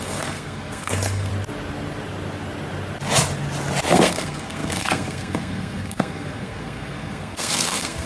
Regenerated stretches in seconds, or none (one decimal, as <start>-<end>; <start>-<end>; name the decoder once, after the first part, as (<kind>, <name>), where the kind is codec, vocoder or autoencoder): 0.0-1.3 (codec, SNAC); 3.9-8.1